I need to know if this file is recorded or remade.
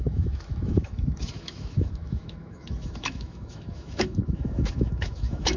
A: remade